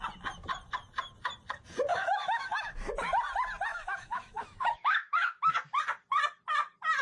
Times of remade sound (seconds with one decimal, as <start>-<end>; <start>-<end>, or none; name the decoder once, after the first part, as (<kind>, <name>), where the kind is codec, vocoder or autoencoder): 1.9-2.9 (autoencoder, DAC-VAE); 3.7-5.5